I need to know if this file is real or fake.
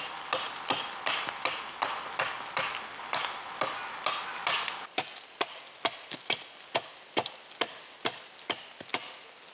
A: real